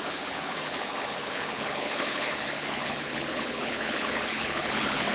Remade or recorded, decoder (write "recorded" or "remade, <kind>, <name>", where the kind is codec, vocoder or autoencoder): remade, codec, HILCodec